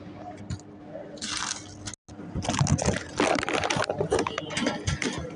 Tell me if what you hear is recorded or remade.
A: recorded